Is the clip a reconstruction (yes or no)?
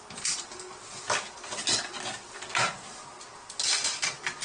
no